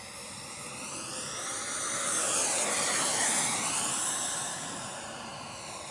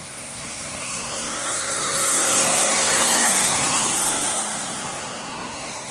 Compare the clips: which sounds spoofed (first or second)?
second